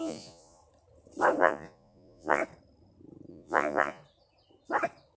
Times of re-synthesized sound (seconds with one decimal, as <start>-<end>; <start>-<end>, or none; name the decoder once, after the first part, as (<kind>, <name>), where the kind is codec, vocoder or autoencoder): 0.0-0.6 (vocoder, Vocos); 1.4-2.4; 3.3-4.0